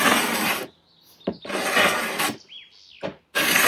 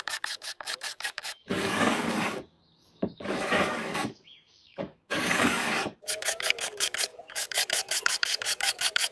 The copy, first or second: second